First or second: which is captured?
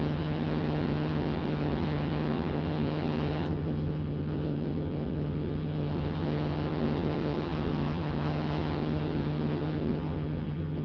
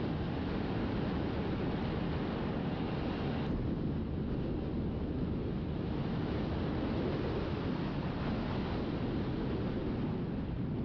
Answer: second